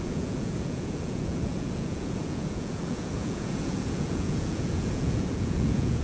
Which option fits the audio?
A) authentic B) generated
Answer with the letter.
B